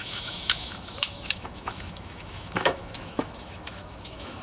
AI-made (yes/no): yes